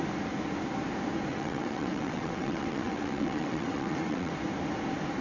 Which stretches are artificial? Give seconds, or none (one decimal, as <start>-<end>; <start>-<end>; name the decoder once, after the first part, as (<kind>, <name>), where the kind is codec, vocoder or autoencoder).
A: 1.3-4.3 (vocoder, WaveNeXt)